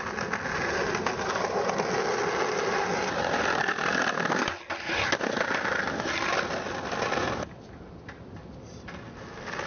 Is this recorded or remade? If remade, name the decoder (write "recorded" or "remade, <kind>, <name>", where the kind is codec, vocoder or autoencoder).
recorded